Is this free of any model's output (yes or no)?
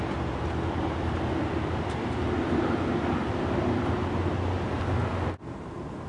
yes